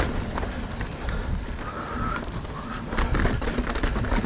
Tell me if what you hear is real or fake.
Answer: fake